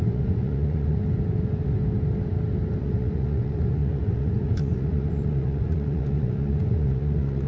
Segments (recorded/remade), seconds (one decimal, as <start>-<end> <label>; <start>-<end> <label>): 0.0-1.0 remade; 1.0-2.8 recorded; 2.8-7.5 remade